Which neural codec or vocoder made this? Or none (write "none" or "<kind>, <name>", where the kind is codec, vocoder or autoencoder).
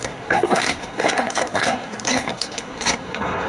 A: codec, SNAC